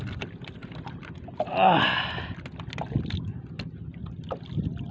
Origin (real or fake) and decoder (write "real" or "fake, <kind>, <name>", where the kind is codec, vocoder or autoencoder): real